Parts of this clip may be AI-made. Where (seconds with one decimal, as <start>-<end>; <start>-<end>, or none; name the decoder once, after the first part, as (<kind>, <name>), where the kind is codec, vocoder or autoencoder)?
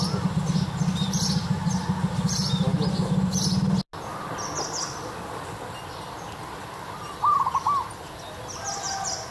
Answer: none